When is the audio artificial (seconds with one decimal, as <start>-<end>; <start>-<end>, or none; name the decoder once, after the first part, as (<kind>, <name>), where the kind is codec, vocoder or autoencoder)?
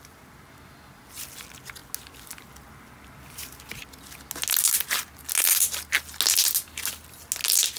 none